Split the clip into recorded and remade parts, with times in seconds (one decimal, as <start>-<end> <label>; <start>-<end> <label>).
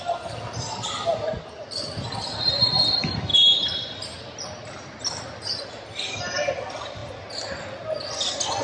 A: 0.0-8.6 recorded